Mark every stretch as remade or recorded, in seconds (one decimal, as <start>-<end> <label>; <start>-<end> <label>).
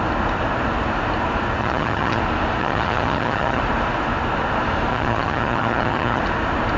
0.0-1.6 recorded; 1.6-2.2 remade; 2.2-2.6 recorded; 2.6-3.6 remade; 3.6-4.9 recorded; 4.9-6.2 remade; 6.2-6.8 recorded